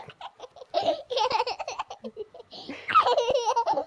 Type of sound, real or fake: real